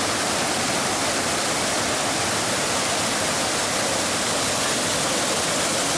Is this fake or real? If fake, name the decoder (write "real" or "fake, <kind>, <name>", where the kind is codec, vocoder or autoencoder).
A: real